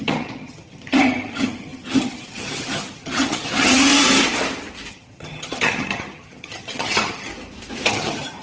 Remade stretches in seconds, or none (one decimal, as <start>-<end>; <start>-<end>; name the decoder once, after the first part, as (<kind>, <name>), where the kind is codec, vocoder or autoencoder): 0.0-3.9 (vocoder, HiFi-GAN); 4.9-7.3; 7.9-8.4